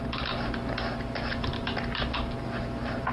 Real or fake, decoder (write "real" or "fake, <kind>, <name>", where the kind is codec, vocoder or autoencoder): real